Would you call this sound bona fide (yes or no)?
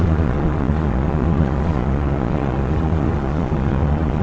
no